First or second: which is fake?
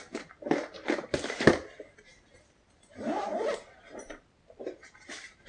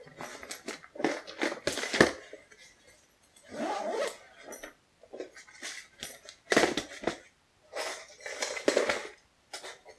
first